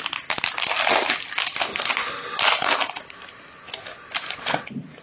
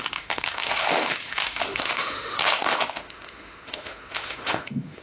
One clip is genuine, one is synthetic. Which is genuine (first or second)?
first